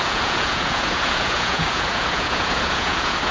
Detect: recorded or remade remade